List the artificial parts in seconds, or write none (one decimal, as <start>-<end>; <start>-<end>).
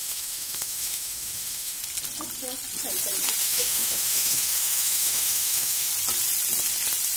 0.0-1.8; 3.4-5.9